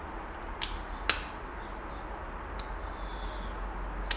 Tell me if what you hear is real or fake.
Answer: real